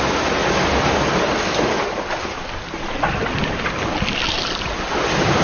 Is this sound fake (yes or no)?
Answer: no